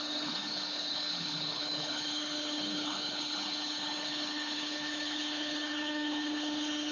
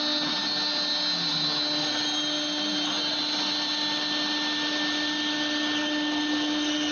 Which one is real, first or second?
second